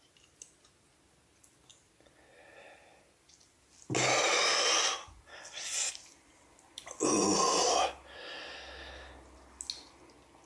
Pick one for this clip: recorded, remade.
recorded